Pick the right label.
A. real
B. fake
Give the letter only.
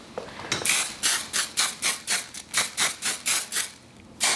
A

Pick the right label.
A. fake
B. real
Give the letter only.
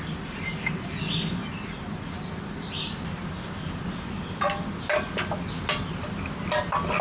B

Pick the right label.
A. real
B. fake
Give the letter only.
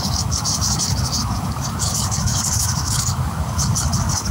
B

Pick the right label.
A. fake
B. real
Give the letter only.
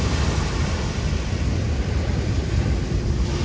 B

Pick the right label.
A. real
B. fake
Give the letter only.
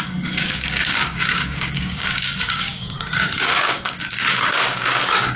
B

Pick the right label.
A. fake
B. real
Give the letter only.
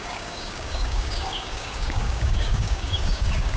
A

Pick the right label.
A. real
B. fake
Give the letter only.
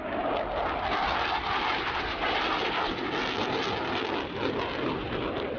A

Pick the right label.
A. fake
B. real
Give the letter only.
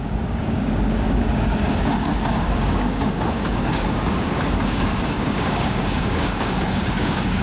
A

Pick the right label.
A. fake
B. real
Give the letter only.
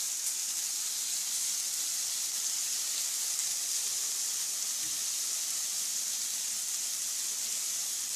B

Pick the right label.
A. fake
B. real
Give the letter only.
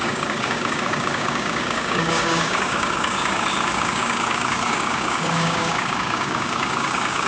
A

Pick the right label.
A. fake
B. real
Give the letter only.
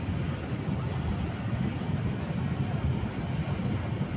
B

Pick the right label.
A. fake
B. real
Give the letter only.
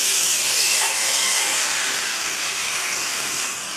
A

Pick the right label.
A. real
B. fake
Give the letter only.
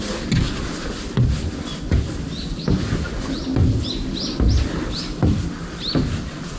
A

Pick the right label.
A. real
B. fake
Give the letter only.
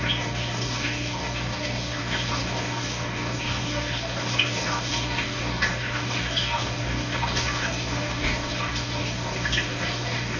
B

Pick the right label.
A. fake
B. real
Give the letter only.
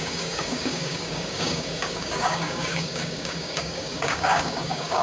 A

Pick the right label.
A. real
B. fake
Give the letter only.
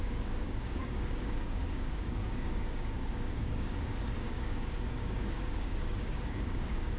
B